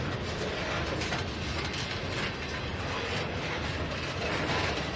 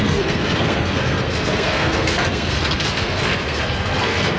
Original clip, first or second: first